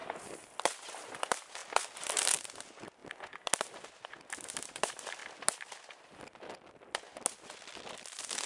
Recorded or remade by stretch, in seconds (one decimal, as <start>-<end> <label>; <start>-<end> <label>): 0.0-8.5 recorded